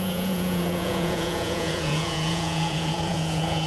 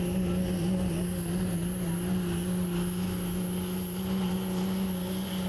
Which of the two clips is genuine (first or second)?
second